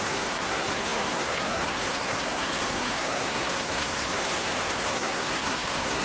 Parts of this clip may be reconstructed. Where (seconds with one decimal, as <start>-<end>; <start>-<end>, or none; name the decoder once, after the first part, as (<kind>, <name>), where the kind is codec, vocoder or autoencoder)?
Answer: 0.0-6.0 (codec, SNAC)